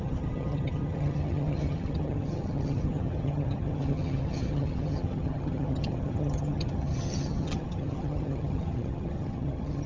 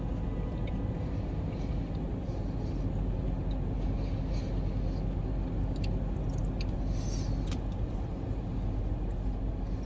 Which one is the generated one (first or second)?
first